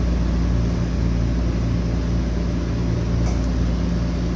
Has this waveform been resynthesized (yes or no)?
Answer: no